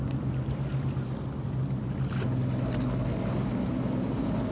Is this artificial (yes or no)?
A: no